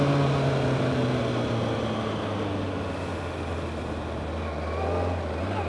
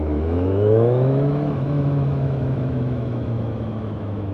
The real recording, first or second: first